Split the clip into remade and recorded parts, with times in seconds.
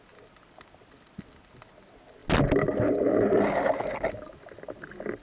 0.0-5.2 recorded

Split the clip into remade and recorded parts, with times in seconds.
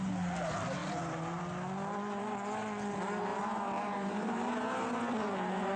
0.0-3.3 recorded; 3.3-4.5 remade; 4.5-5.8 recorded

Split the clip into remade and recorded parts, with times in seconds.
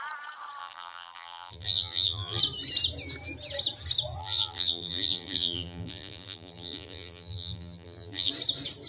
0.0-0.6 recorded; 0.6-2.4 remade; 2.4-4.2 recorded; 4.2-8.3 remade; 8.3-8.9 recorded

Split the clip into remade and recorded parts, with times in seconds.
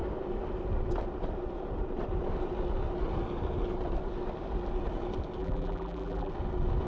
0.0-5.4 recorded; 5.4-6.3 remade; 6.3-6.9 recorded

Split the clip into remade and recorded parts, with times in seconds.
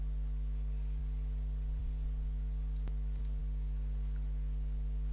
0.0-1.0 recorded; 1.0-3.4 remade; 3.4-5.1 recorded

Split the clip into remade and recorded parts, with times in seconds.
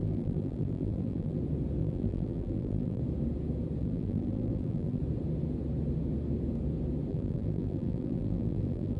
0.0-1.4 remade; 1.4-1.8 recorded; 1.8-3.0 remade; 3.0-3.8 recorded; 3.8-5.0 remade; 5.0-7.1 recorded; 7.1-9.0 remade